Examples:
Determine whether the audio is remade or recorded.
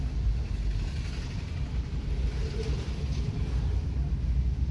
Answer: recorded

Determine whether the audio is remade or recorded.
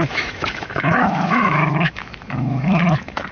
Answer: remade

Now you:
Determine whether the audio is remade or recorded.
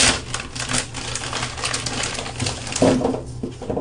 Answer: recorded